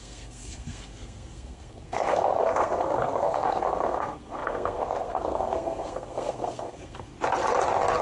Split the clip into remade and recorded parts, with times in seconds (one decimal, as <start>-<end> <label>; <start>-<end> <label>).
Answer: 0.0-7.1 remade; 7.1-8.0 recorded